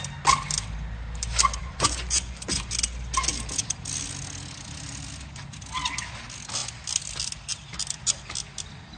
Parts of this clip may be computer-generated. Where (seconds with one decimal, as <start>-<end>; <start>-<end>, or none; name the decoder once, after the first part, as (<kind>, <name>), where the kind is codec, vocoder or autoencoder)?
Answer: 1.6-2.7 (vocoder, Vocos)